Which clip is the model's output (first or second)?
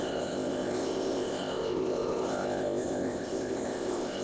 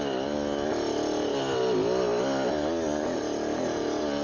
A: first